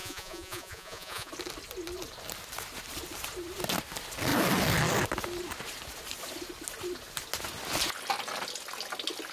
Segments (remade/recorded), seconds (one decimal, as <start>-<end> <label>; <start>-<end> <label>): 0.0-1.3 remade; 1.3-9.3 recorded